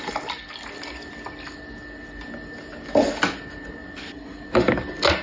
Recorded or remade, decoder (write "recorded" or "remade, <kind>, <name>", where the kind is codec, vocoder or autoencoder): recorded